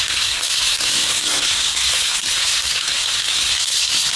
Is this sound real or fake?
fake